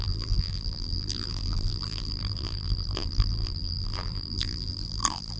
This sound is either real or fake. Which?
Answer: fake